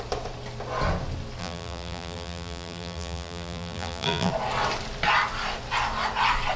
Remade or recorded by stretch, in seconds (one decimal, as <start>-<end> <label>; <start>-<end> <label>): 0.0-1.4 recorded; 1.4-4.3 remade; 4.3-6.6 recorded